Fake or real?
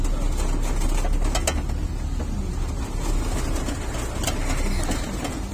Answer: real